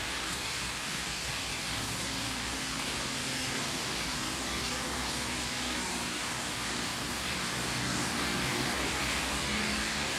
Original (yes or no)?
no